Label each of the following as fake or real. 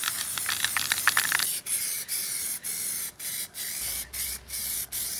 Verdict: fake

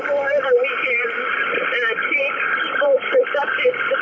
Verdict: fake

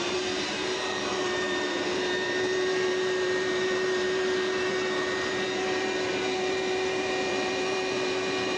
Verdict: fake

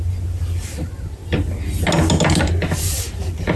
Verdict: real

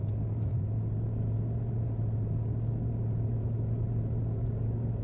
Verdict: real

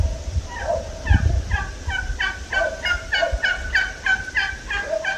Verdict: real